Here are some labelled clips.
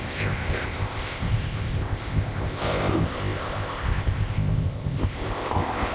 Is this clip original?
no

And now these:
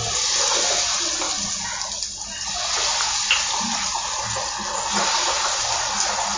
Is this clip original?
yes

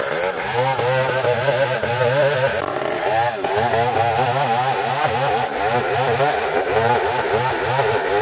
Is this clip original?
yes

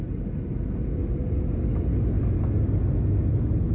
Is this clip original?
yes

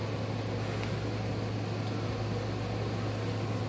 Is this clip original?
yes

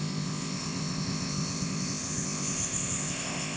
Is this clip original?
no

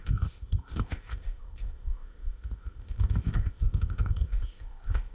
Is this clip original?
no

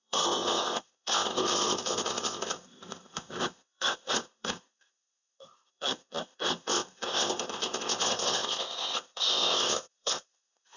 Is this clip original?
no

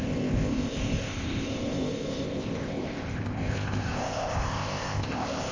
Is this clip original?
no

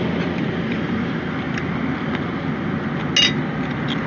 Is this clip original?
yes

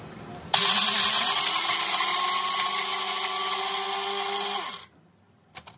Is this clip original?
yes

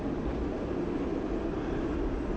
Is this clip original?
yes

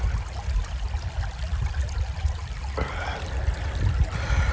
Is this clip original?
yes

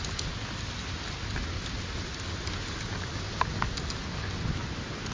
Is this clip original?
yes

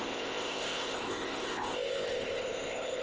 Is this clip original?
no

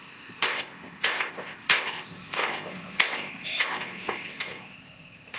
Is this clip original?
no